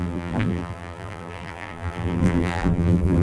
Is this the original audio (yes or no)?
no